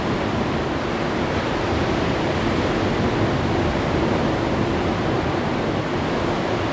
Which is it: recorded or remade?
recorded